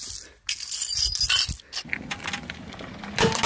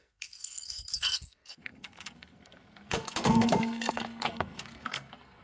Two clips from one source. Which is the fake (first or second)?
second